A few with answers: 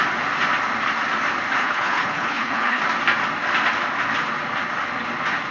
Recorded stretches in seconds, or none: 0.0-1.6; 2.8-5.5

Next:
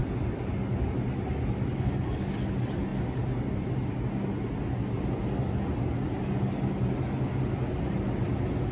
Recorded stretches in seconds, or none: 0.0-8.7

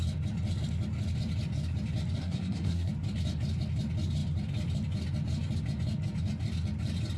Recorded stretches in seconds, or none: 0.0-2.2; 2.9-7.2

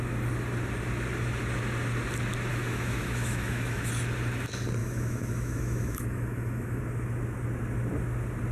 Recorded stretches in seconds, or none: 0.0-2.5; 3.9-4.8; 6.8-8.5

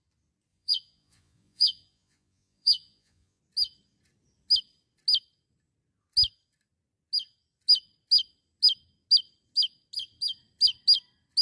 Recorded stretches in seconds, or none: 0.0-0.5; 3.4-11.4